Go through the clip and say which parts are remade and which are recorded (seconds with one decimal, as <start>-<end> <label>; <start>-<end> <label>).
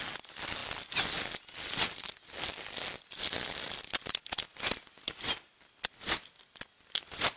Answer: 0.0-7.4 recorded